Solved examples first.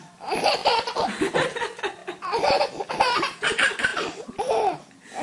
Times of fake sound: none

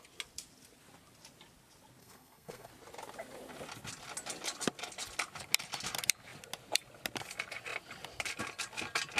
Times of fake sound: 2.0-2.7 (codec, SNAC)

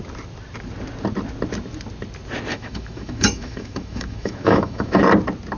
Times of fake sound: 2.5-5.0 (autoencoder, DAC-VAE)

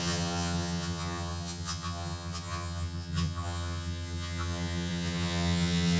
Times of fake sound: 0.0-6.0 (vocoder, HiFi-GAN)

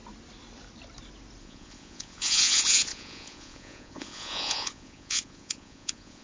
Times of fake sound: 1.4-6.2 (vocoder, Vocos)

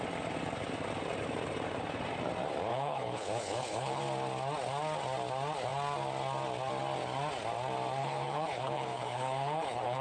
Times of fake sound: 2.7-4.0 (codec, HILCodec); 8.0-10.0

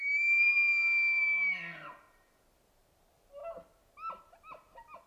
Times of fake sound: none

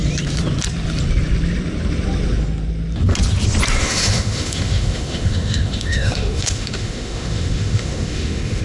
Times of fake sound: 3.8-8.6 (autoencoder, DAC-VAE)